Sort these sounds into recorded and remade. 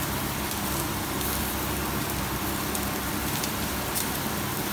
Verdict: remade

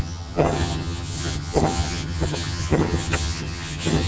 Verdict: remade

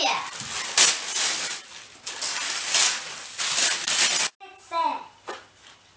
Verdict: recorded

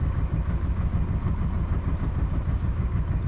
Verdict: remade